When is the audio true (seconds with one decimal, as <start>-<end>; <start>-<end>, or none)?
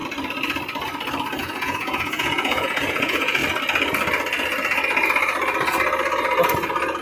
0.0-1.4; 3.4-7.0